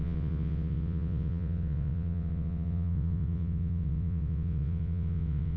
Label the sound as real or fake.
fake